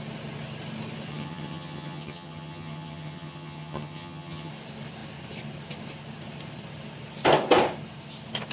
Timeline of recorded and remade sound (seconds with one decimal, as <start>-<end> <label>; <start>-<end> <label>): 0.0-1.1 recorded; 1.1-4.5 remade; 4.5-8.5 recorded